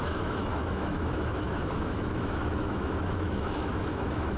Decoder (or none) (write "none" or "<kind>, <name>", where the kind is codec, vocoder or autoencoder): autoencoder, DAC-VAE